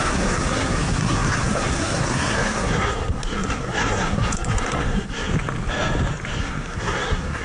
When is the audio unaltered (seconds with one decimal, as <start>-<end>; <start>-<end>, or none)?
5.3-6.4